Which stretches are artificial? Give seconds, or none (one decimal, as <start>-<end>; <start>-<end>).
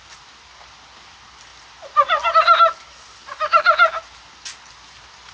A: none